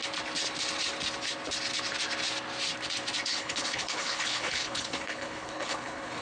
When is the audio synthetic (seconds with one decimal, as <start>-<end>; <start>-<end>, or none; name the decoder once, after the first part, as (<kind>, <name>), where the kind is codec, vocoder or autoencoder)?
3.3-6.2 (codec, HILCodec)